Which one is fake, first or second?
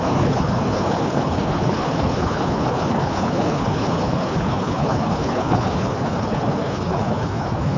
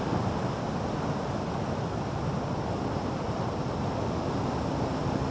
first